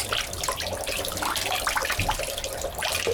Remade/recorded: recorded